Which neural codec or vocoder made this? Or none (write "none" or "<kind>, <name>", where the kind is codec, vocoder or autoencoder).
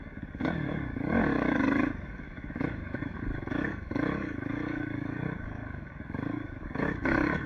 codec, DAC